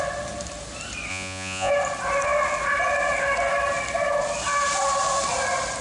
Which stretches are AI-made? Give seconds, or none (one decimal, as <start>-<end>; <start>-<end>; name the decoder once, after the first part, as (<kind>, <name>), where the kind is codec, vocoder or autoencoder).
1.1-1.7 (vocoder, Vocos)

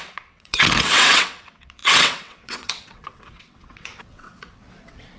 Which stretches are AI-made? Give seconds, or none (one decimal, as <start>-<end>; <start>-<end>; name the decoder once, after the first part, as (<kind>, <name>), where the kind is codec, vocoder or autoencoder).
0.0-5.2 (vocoder, WaveNeXt)

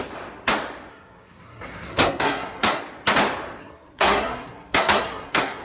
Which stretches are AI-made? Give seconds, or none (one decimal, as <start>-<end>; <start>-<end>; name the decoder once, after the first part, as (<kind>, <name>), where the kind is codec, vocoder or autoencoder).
0.9-2.8 (codec, SNAC); 3.6-5.6

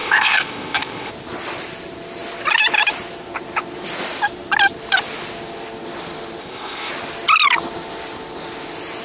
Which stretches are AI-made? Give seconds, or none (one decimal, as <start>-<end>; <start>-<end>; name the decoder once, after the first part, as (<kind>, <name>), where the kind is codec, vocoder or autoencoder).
0.0-1.1 (codec, ZipCodec); 6.4-6.9

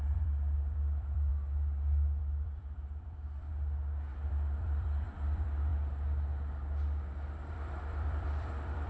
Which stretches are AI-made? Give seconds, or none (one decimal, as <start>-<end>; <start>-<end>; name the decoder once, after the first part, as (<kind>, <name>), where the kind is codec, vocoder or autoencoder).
0.0-1.3 (vocoder, BigVGAN v2); 2.2-3.5; 4.3-5.7; 7.5-8.9

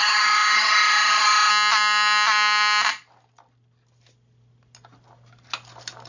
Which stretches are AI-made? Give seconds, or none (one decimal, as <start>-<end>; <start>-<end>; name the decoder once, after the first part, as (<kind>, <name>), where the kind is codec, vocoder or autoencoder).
0.0-1.5 (autoencoder, DAC-VAE)

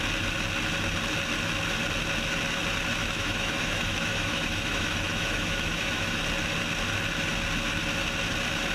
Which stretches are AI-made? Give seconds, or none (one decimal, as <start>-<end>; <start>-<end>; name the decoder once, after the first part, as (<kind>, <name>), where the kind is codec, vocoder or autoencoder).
3.0-6.2 (autoencoder, DAC-VAE)

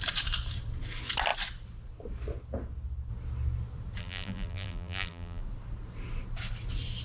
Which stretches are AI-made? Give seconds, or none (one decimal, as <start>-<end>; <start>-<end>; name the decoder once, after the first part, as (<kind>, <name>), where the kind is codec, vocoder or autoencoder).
4.0-5.4 (vocoder, BigVGAN v2)